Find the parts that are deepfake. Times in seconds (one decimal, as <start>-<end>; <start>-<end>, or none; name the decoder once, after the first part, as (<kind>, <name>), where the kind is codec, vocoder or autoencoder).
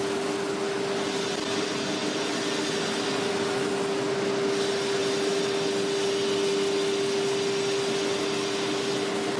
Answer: none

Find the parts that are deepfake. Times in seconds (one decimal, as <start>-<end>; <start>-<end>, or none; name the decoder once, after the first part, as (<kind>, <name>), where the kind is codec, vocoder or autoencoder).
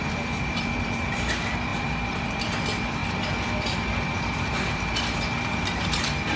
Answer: 0.0-3.0 (vocoder, BigVGAN v2); 4.2-6.4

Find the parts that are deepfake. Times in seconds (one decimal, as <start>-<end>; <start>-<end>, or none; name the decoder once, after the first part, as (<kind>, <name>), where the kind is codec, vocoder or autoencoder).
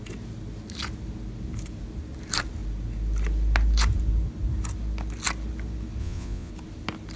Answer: 6.0-6.5 (vocoder, Vocos)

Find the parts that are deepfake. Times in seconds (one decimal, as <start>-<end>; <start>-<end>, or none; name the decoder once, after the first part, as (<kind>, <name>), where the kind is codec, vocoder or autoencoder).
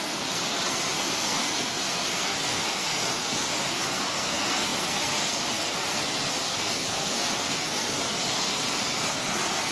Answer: 0.0-9.7 (codec, SNAC)